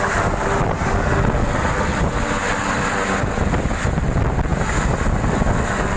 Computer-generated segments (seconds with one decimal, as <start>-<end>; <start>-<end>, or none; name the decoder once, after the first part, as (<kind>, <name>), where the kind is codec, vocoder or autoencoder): none

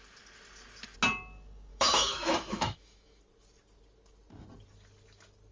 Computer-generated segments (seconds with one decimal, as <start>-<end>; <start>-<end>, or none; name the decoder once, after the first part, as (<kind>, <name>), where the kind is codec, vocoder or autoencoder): 1.7-3.2 (autoencoder, DAC-VAE)

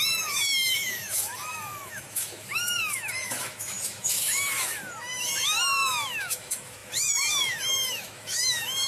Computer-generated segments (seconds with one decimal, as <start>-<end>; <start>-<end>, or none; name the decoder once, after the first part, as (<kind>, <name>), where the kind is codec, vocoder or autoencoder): 0.0-8.9 (autoencoder, DAC-VAE)

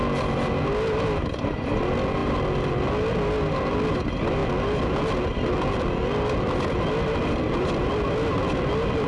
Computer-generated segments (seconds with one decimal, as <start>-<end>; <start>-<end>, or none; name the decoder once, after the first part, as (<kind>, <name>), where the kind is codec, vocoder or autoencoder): none